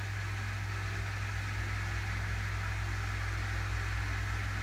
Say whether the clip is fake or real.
real